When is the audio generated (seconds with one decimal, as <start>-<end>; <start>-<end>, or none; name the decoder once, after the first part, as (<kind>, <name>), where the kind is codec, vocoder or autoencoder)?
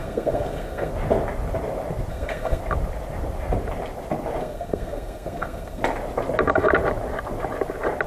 0.0-0.9 (codec, SNAC); 2.1-2.6; 4.4-5.8